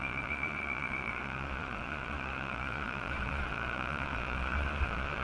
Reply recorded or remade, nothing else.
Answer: remade